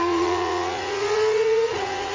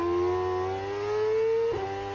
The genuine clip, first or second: second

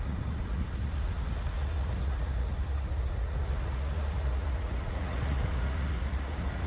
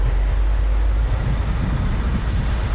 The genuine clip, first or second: second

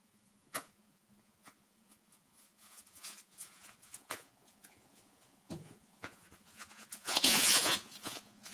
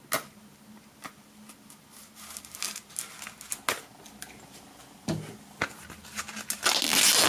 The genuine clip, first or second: second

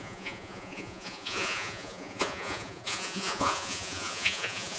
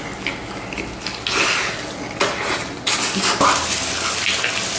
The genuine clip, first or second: second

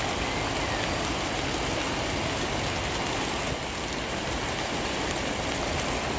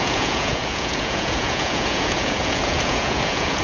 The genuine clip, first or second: first